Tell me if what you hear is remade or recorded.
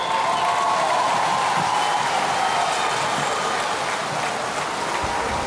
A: recorded